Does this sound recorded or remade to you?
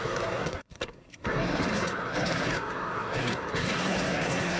remade